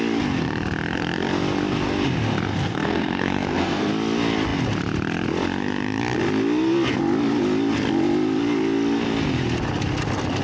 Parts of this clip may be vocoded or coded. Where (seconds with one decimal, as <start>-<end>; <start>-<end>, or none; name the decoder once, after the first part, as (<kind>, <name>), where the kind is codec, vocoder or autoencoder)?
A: 2.5-3.9 (codec, SNAC)